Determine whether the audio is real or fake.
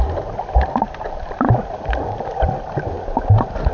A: real